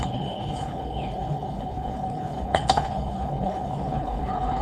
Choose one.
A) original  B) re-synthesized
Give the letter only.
B